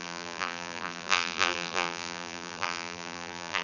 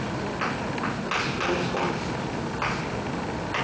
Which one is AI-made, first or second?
first